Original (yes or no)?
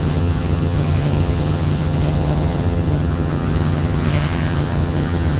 no